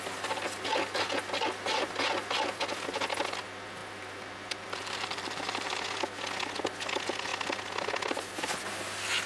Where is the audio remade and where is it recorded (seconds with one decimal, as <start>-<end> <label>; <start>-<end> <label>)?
0.0-3.8 recorded; 3.8-5.8 remade; 5.8-9.3 recorded